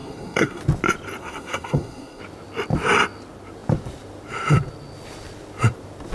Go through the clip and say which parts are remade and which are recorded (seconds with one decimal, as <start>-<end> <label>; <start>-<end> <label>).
0.0-0.6 remade; 0.6-1.2 recorded; 1.2-2.2 remade; 2.2-6.1 recorded